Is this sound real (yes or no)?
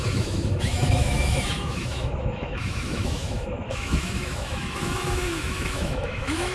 no